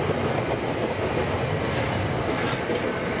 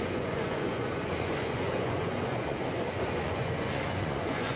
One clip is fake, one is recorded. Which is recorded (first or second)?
first